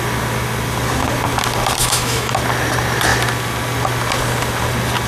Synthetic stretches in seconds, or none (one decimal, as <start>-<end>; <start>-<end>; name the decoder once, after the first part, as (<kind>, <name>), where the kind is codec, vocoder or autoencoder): 1.8-2.3 (autoencoder, DAC-VAE)